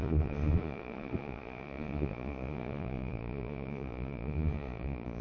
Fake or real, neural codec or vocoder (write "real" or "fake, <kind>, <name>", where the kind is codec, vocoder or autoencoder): fake, vocoder, Vocos